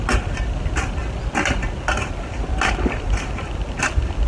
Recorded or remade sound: recorded